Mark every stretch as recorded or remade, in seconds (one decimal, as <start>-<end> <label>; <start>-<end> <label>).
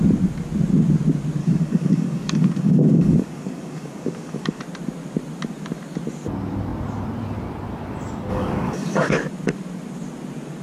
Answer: 0.0-1.4 recorded; 1.4-4.6 remade; 4.6-8.3 recorded; 8.3-9.1 remade; 9.1-10.6 recorded